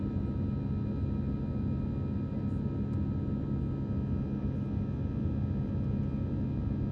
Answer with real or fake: real